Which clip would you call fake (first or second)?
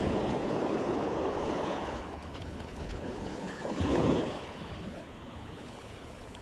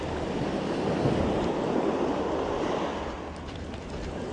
first